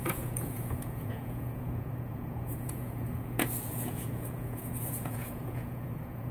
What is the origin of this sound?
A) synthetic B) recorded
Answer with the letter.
A